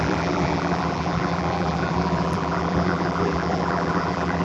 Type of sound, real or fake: fake